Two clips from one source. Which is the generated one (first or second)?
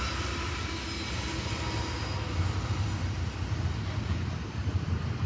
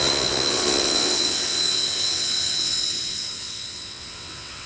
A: second